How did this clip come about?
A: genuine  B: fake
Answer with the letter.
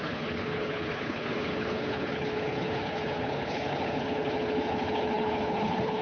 B